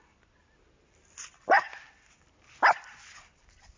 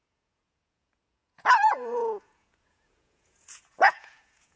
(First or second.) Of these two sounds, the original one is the first